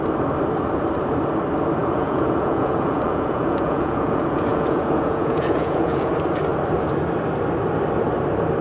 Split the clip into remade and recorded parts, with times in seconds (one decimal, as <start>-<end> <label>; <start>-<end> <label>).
0.0-1.8 recorded; 1.8-6.1 remade; 6.1-8.6 recorded